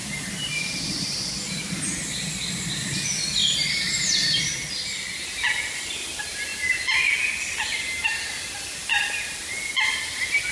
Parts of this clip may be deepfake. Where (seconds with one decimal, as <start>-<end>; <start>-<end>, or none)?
0.0-1.9; 3.4-4.4